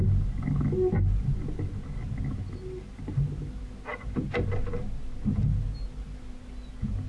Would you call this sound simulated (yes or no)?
no